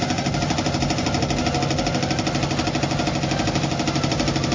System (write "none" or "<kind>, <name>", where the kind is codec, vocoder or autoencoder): none